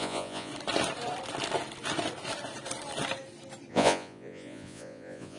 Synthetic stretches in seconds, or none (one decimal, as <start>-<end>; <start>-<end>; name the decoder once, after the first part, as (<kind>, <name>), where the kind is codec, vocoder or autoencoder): 0.0-0.5 (vocoder, Vocos); 3.7-5.4